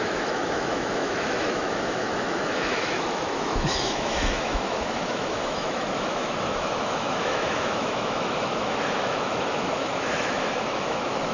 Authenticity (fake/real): fake